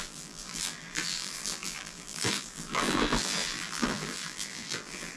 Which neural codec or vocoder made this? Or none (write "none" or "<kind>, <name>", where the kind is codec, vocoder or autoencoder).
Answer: vocoder, BigVGAN v2